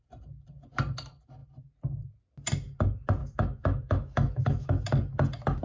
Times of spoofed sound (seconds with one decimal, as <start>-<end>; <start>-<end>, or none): 3.2-4.7